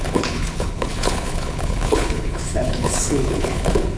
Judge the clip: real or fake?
fake